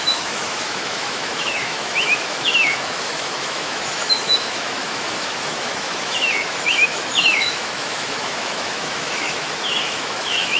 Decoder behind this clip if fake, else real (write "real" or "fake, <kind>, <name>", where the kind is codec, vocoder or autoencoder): fake, autoencoder, DAC-VAE